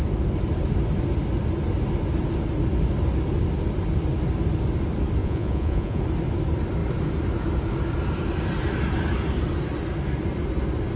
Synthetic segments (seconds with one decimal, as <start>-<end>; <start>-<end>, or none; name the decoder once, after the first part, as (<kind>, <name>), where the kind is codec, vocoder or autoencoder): 5.2-6.0 (vocoder, Vocos)